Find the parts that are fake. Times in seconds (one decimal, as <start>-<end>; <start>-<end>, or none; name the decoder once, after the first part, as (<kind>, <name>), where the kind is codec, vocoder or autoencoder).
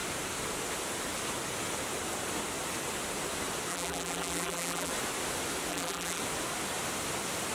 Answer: 3.7-4.9 (vocoder, BigVGAN v2); 5.7-6.2